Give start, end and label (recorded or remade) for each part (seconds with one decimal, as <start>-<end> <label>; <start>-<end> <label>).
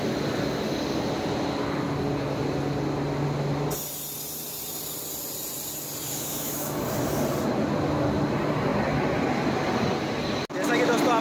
0.0-6.3 recorded; 6.3-6.8 remade; 6.8-11.2 recorded